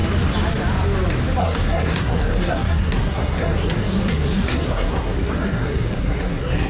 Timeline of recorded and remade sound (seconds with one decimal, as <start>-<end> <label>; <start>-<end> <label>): 0.0-1.4 recorded; 1.4-6.7 remade